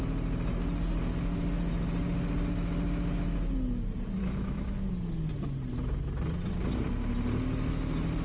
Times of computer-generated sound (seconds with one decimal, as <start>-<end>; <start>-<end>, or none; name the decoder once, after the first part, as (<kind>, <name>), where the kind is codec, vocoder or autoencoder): 4.2-4.9 (autoencoder, DAC-VAE)